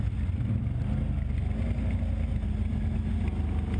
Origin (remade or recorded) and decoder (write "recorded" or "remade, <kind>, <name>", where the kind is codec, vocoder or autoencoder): recorded